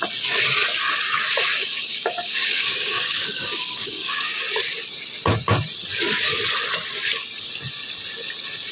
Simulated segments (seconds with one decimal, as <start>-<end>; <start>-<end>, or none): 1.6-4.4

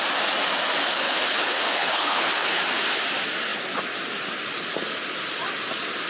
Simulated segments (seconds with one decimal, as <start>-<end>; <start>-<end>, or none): 0.8-2.6

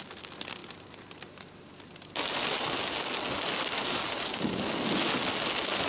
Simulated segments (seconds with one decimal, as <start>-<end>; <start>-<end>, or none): none

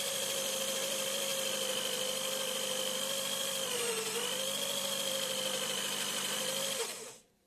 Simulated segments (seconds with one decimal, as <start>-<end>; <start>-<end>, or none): 0.0-7.5

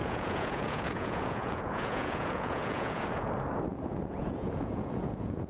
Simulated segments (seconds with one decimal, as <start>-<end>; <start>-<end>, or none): 0.0-3.3; 3.7-5.5